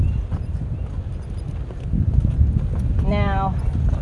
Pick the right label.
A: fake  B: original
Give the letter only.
B